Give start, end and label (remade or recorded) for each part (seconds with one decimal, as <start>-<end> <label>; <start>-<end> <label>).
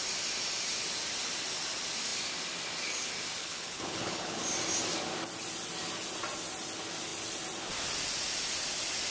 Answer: 0.0-3.4 recorded; 3.4-4.4 remade; 4.4-9.1 recorded